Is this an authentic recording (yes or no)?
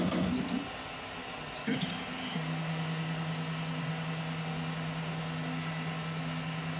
yes